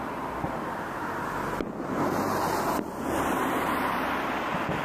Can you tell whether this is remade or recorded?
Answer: recorded